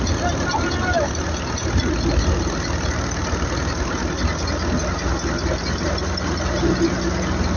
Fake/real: real